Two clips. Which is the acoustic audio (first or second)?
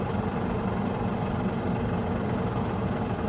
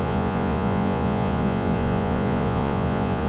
first